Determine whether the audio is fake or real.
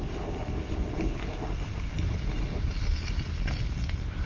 real